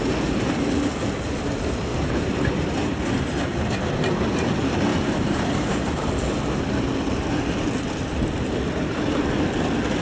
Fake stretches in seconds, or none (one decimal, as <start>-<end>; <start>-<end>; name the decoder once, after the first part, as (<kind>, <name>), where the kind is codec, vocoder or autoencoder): 1.9-3.0 (vocoder, BigVGAN v2); 4.9-6.1